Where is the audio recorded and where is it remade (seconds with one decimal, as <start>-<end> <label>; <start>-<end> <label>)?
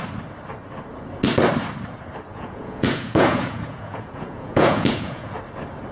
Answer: 0.0-2.3 recorded; 2.3-5.3 remade; 5.3-5.9 recorded